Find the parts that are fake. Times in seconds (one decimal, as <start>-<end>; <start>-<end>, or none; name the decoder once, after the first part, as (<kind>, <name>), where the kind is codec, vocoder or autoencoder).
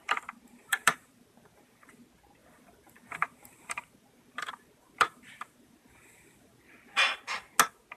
0.6-1.9 (vocoder, BigVGAN v2); 2.4-7.2